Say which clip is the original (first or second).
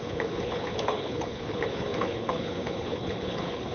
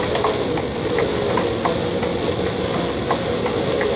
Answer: second